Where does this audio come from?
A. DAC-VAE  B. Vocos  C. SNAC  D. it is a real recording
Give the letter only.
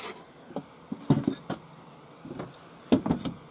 D